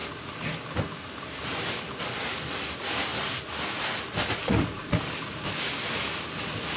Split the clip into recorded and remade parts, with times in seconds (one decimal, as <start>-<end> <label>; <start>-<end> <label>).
0.0-6.8 recorded